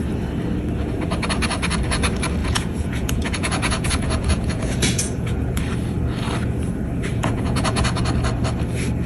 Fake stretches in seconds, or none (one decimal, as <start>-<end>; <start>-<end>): 2.4-5.6; 7.1-8.0